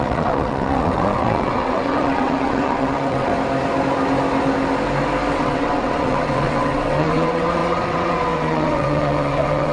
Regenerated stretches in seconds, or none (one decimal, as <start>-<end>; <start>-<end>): 0.0-3.3; 5.3-9.7

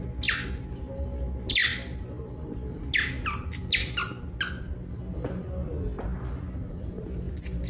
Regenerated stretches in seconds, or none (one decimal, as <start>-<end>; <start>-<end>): none

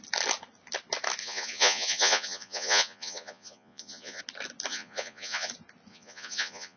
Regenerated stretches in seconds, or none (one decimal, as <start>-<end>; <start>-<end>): 1.2-4.2; 4.7-5.5; 5.9-6.8

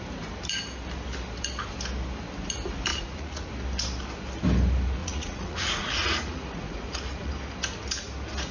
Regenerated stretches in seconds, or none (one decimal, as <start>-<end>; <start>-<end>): 2.9-3.5; 5.0-7.3

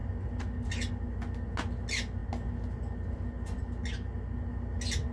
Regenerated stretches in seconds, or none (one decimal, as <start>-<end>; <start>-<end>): none

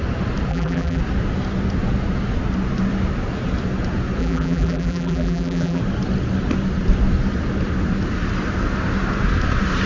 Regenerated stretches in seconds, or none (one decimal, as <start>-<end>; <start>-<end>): 0.5-1.0; 4.2-5.8

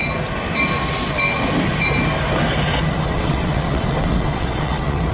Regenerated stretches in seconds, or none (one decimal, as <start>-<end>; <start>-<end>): 3.1-5.1